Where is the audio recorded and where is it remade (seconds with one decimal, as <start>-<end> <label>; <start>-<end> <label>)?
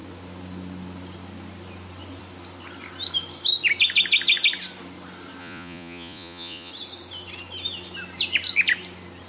0.0-5.4 recorded; 5.4-6.7 remade; 6.7-9.3 recorded